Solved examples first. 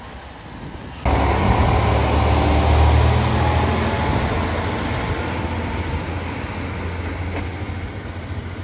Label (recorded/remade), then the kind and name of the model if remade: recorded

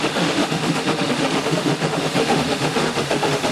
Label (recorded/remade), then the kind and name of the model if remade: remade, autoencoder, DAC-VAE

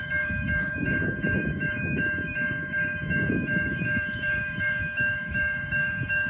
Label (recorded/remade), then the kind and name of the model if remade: remade, autoencoder, DAC-VAE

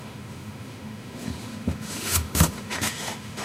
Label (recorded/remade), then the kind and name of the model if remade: remade, autoencoder, DAC-VAE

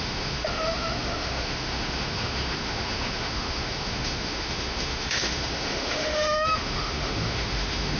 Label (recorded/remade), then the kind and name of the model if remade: remade, autoencoder, DAC-VAE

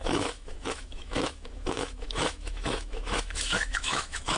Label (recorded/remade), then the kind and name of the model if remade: remade, autoencoder, DAC-VAE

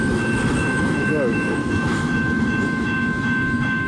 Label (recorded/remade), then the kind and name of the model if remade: remade, autoencoder, DAC-VAE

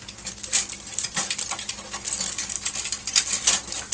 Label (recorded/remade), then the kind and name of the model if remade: recorded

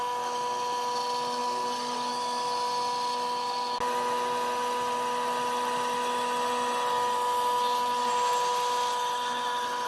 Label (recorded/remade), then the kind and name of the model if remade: recorded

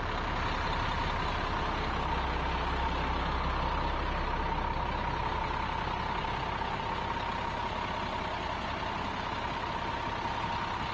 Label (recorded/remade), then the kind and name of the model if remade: recorded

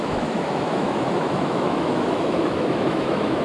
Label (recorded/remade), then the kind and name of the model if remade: remade, autoencoder, DAC-VAE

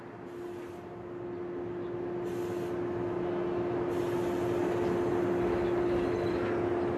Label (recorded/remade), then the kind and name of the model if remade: recorded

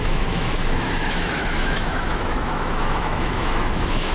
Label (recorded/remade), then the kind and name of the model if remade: remade, autoencoder, DAC-VAE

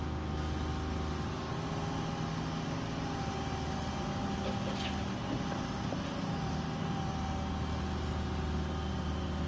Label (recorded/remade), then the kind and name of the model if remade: recorded